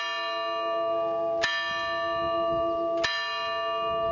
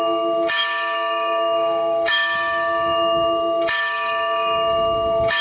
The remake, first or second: second